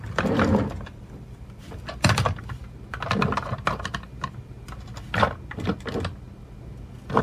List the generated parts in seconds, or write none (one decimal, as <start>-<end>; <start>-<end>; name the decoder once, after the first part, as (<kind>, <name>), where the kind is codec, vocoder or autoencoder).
0.0-2.6 (vocoder, BigVGAN v2)

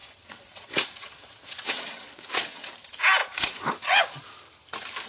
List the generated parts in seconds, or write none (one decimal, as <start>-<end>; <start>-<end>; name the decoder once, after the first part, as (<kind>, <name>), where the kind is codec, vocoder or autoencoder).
0.0-2.7 (vocoder, WaveNeXt); 3.2-4.2

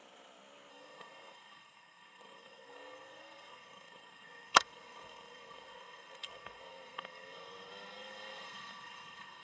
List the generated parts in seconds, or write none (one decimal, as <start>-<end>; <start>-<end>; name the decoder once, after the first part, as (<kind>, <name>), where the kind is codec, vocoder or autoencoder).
0.7-9.4 (codec, SNAC)

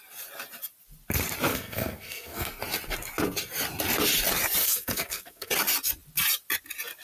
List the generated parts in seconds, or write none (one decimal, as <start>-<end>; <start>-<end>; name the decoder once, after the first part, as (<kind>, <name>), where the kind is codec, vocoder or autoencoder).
1.5-2.6 (codec, SNAC); 4.6-5.5

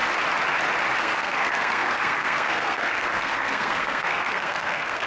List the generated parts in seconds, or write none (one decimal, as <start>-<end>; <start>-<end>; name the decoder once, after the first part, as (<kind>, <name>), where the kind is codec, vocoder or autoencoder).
1.0-5.1 (codec, SNAC)

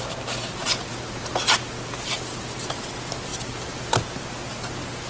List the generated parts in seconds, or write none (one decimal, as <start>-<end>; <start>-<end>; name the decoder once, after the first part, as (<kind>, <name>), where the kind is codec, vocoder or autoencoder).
none

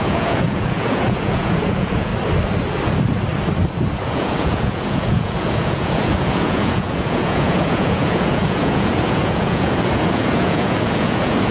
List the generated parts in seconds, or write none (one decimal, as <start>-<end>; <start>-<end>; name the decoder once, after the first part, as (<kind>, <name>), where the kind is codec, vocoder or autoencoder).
0.0-2.1 (vocoder, Vocos); 4.0-11.5

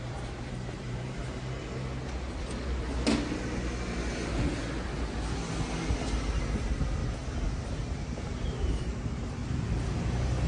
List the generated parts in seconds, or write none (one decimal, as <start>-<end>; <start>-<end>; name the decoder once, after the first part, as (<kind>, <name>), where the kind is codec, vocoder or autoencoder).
0.0-1.2 (vocoder, BigVGAN v2); 6.4-7.0; 7.6-9.4; 10.0-10.5